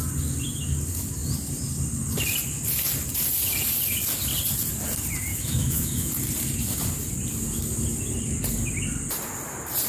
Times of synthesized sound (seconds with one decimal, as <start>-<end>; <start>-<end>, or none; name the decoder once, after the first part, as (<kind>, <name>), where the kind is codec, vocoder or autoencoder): 5.3-6.1 (autoencoder, DAC-VAE)